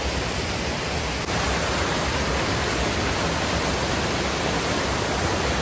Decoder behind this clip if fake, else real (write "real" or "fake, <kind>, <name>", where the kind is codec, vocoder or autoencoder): real